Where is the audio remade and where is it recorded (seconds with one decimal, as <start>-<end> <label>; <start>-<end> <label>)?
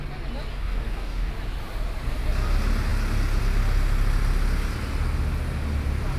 0.0-0.5 recorded; 0.5-1.3 remade; 1.3-6.2 recorded